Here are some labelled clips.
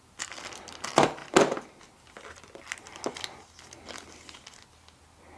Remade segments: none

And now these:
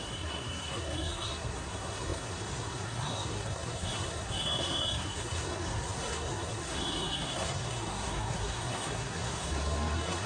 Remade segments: 0.0-10.3 (codec, SNAC)

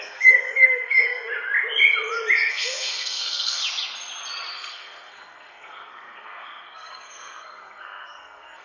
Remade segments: 0.0-1.3 (codec, SNAC); 2.5-3.6; 4.5-8.6

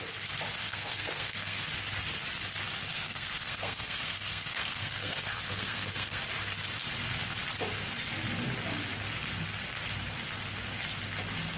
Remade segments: 0.6-1.7 (codec, SNAC); 2.9-6.2

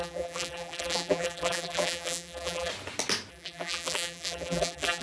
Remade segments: 0.0-2.7 (vocoder, BigVGAN v2); 3.3-5.0